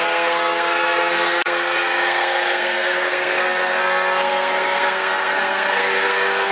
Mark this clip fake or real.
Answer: fake